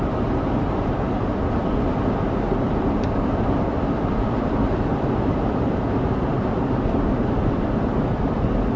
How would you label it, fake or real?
fake